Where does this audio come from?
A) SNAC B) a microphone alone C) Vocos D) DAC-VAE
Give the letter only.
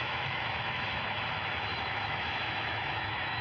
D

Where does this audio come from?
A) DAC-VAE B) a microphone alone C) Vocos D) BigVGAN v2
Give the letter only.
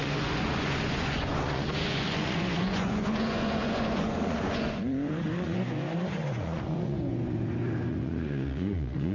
C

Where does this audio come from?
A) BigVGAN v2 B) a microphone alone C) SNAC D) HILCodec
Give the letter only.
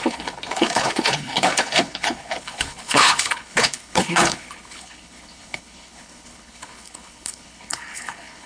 D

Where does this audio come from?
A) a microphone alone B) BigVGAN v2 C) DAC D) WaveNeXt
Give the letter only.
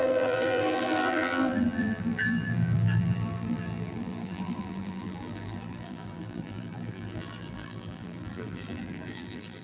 B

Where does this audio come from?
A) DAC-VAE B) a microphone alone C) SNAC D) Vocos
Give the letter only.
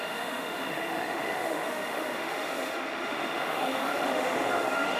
A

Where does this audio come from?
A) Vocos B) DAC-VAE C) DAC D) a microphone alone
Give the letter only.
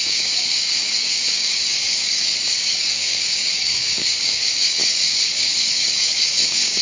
C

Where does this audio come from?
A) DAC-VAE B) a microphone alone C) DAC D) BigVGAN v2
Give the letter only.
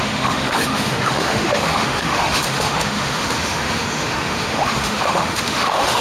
A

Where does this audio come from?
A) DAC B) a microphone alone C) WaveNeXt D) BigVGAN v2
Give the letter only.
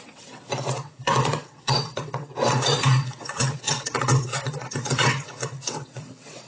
C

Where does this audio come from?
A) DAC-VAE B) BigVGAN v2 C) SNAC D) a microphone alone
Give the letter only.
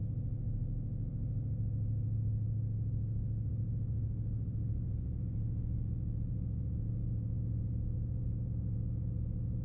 D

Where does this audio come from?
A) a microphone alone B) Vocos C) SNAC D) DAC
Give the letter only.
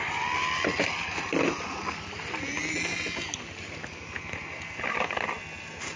A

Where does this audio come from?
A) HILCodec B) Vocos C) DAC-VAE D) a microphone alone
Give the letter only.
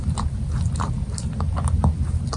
D